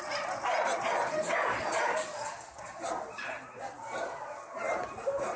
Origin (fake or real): real